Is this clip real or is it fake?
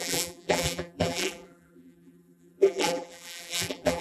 fake